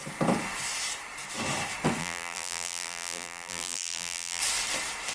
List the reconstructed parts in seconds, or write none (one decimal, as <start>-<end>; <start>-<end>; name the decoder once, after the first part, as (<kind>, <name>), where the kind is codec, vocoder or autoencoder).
2.0-4.4 (vocoder, BigVGAN v2)